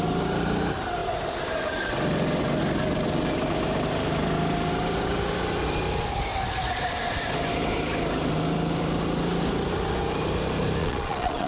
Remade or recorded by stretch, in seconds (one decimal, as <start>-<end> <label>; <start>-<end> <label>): 0.0-10.8 recorded; 10.8-11.5 remade